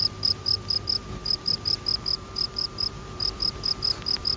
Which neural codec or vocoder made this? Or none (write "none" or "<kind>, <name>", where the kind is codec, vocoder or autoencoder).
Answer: vocoder, BigVGAN v2